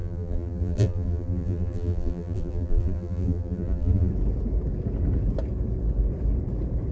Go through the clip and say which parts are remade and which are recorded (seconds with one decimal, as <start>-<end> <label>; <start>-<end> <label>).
0.0-4.1 remade; 4.1-6.9 recorded